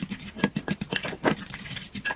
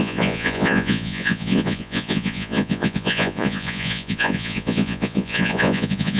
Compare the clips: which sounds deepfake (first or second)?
second